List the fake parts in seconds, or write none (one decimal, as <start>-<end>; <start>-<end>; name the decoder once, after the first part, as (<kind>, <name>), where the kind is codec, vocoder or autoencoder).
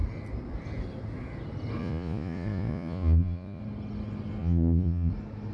1.8-3.6 (vocoder, Vocos); 4.4-5.1